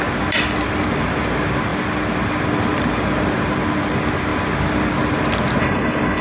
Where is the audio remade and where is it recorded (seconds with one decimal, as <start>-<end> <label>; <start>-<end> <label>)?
0.0-5.6 recorded; 5.6-6.2 remade